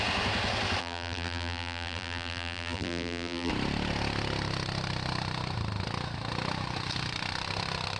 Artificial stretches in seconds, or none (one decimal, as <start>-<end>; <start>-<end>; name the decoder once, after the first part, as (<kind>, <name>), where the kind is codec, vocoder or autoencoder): 0.8-3.5 (vocoder, BigVGAN v2)